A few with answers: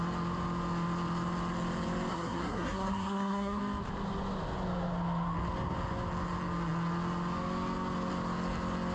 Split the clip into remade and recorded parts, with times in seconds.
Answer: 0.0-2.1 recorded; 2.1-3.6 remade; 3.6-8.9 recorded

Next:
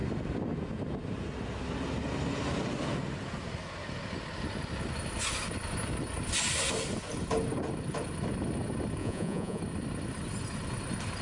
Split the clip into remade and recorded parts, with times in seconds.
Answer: 0.0-9.0 recorded; 9.0-9.6 remade; 9.6-11.2 recorded

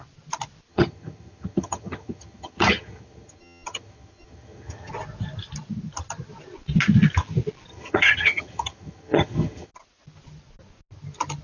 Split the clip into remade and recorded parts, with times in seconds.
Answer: 0.0-0.7 recorded; 0.7-4.9 remade; 4.9-7.7 recorded; 7.7-9.7 remade; 9.7-11.4 recorded